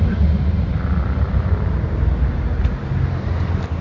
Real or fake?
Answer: real